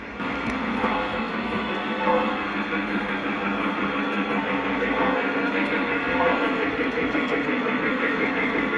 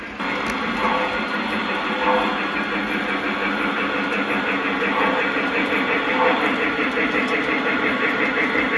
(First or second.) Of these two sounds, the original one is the second